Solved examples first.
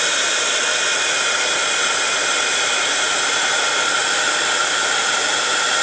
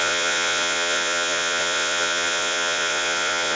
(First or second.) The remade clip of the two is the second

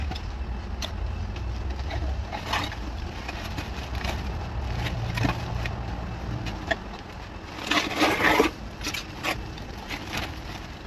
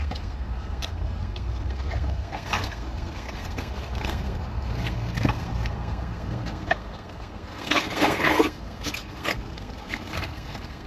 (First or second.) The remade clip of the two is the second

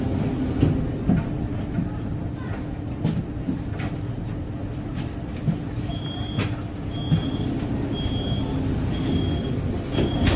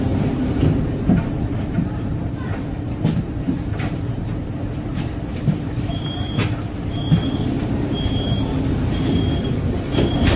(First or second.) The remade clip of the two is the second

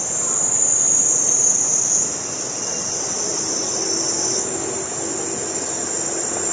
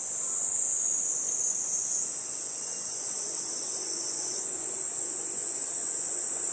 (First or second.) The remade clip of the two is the second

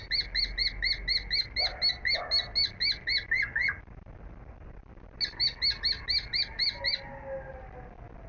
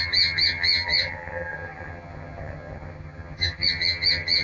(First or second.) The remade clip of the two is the second